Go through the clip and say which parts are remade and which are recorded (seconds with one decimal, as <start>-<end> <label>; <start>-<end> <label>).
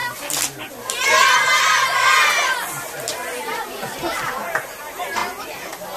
0.0-0.7 recorded; 0.7-5.2 remade; 5.2-6.0 recorded